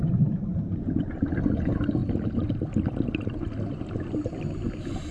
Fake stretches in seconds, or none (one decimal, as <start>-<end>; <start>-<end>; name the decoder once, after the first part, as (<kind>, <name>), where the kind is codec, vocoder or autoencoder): none

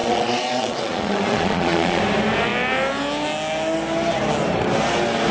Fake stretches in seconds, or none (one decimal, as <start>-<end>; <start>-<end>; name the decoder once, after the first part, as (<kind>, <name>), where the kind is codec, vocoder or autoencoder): 0.0-2.0 (vocoder, Vocos)

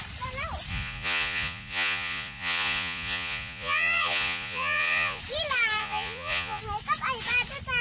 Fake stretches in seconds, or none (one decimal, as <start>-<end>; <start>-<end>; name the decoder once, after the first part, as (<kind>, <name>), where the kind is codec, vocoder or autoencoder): 0.7-5.2 (vocoder, Vocos); 5.8-6.6

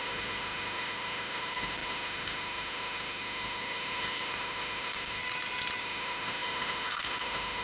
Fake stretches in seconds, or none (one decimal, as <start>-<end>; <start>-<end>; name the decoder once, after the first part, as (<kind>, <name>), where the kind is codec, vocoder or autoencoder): 0.0-5.2 (autoencoder, DAC-VAE); 5.8-7.6

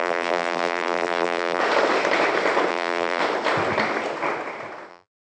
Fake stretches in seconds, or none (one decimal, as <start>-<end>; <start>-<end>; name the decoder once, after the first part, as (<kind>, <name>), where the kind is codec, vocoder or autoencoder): 0.0-1.6 (vocoder, BigVGAN v2); 2.7-3.2; 4.9-5.4

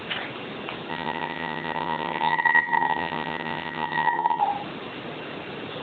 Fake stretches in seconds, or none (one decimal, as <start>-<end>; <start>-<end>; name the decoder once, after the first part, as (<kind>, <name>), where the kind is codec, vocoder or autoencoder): 0.9-4.4 (vocoder, HiFi-GAN)